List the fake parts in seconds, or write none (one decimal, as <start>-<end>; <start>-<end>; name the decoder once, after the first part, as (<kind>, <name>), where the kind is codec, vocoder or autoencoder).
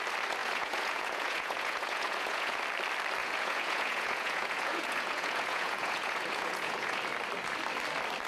0.4-2.6 (vocoder, Vocos); 3.2-7.0